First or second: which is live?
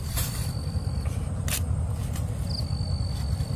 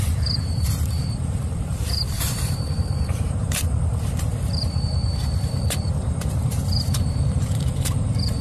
first